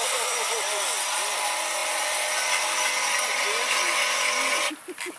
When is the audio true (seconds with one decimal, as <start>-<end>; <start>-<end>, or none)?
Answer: 0.0-5.2